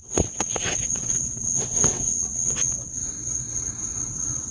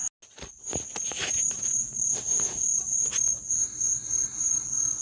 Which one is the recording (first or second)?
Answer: second